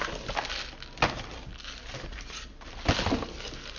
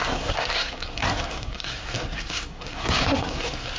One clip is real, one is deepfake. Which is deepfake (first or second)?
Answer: second